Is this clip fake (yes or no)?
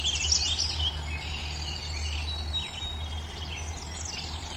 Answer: no